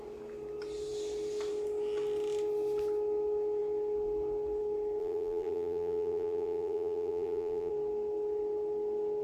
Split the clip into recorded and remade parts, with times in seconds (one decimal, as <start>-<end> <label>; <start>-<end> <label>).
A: 0.0-5.0 recorded; 5.0-7.7 remade; 7.7-9.2 recorded